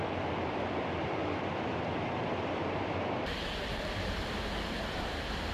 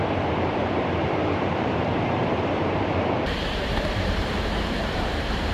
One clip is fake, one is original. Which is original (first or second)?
first